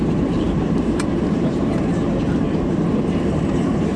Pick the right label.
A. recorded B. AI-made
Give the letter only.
B